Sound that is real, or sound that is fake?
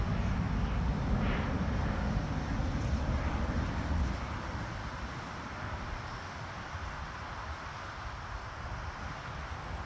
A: real